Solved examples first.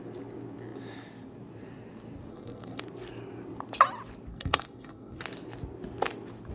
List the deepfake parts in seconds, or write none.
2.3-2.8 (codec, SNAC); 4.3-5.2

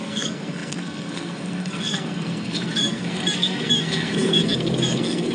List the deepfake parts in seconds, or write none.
0.0-5.3 (codec, SNAC)